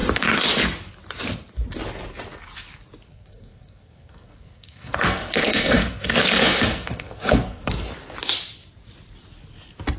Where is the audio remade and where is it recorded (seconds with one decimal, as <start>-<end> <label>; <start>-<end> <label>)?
0.0-3.1 recorded; 3.1-7.7 remade; 7.7-10.0 recorded